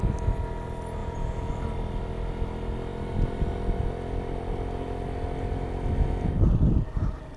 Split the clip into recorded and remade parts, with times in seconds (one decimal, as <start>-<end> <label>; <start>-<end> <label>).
0.0-1.0 recorded; 1.0-1.5 remade; 1.5-7.4 recorded